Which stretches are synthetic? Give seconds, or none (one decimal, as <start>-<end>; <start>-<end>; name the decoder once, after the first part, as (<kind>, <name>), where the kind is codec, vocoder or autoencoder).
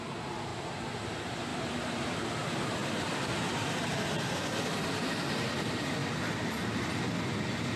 1.5-2.1 (vocoder, BigVGAN v2); 2.8-4.9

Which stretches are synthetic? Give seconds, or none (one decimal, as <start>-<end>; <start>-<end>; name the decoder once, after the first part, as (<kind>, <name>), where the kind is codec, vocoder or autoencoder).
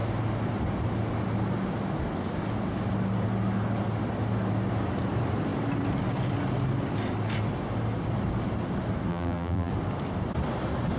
9.1-9.7 (vocoder, BigVGAN v2)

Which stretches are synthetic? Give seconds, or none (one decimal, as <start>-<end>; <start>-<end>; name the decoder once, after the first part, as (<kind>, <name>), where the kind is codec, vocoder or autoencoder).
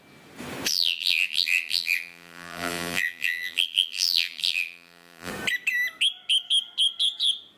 0.7-5.3 (vocoder, BigVGAN v2)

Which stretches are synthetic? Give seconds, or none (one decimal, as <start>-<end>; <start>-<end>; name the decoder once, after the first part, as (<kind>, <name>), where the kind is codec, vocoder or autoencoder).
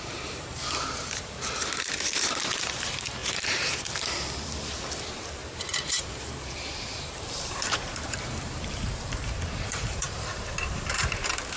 0.0-5.4 (vocoder, BigVGAN v2); 6.0-11.6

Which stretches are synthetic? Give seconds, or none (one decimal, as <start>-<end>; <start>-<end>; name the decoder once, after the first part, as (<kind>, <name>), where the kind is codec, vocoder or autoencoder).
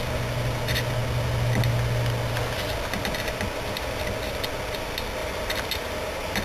5.2-6.4 (vocoder, BigVGAN v2)